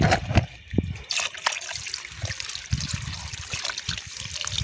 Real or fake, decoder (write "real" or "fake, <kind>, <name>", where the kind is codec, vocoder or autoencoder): real